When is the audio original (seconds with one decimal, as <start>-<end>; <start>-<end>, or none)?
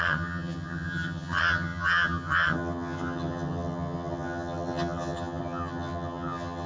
none